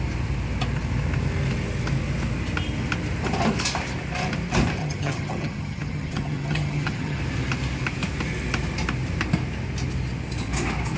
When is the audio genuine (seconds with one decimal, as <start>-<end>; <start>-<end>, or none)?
0.0-4.8; 7.2-11.0